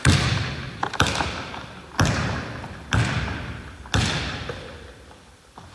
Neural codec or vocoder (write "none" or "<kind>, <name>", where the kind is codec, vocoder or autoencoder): vocoder, BigVGAN v2